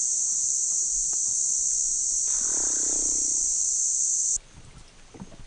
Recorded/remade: recorded